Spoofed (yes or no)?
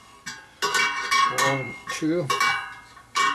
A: no